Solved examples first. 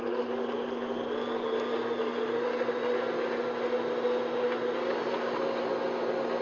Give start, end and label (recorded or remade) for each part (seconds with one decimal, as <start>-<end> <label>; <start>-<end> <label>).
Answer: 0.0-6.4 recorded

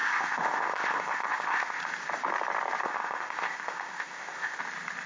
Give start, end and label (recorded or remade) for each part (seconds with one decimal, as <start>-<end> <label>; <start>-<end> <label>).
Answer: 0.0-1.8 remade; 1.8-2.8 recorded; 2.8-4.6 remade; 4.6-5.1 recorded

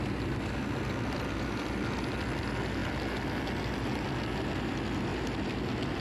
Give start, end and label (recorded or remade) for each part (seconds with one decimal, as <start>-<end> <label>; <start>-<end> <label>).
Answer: 0.0-6.0 recorded

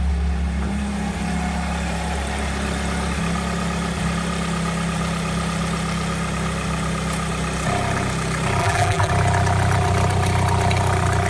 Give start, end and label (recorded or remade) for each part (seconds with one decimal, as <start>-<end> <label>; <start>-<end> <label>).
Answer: 0.0-8.6 recorded; 8.6-9.1 remade; 9.1-11.3 recorded

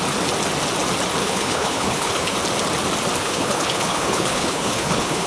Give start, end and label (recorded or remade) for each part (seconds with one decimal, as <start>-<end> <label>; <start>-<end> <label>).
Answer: 0.0-1.2 recorded; 1.2-2.4 remade; 2.4-3.2 recorded; 3.2-5.3 remade

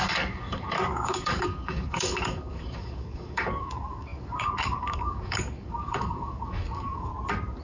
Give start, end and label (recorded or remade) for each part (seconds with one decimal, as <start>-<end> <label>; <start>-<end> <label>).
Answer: 0.0-7.1 remade; 7.1-7.6 recorded